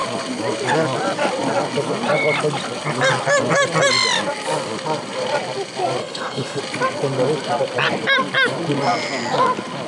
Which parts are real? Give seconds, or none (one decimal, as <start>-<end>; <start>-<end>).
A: 0.0-6.0; 6.6-9.9